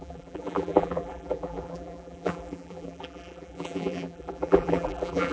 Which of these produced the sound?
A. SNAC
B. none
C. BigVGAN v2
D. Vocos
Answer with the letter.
C